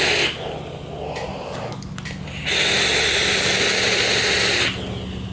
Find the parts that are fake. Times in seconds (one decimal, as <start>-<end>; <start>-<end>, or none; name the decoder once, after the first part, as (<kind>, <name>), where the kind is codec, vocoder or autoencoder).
none